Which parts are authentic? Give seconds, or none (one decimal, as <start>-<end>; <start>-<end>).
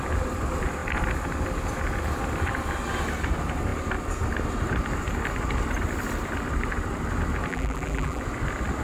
0.0-7.5; 8.2-8.8